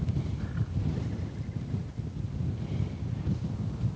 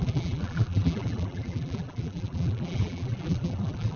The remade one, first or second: second